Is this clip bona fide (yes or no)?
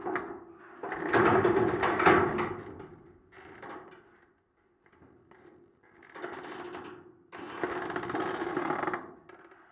yes